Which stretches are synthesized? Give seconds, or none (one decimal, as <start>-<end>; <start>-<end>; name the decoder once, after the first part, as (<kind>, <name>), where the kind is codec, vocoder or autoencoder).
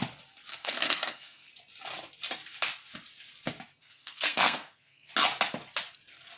0.5-1.5 (codec, SNAC); 3.8-5.1